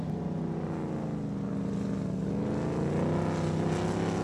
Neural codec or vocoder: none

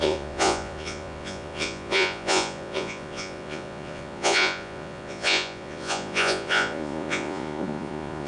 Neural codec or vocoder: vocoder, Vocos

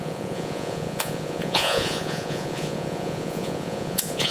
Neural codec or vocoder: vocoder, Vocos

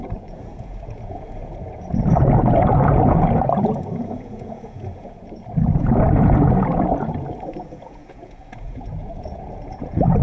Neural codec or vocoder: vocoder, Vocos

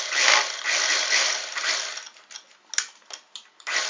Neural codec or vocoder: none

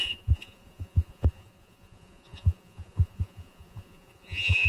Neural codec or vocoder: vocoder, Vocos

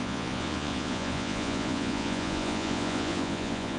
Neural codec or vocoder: vocoder, Vocos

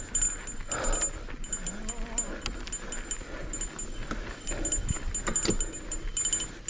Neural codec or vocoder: none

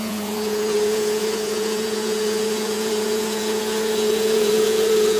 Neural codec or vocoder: vocoder, Vocos